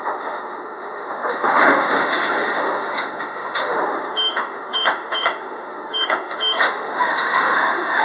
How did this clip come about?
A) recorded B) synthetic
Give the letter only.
B